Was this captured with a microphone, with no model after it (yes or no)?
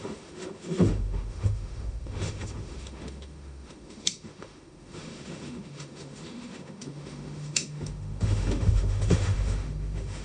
no